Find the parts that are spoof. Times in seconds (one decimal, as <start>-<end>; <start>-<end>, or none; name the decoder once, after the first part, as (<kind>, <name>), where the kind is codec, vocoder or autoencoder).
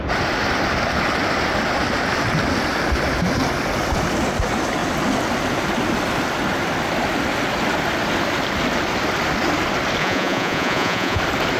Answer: 10.0-11.2 (vocoder, Vocos)